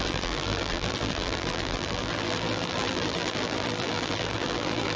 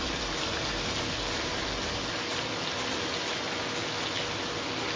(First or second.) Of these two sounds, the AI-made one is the first